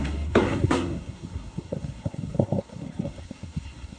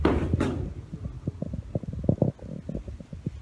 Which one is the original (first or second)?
second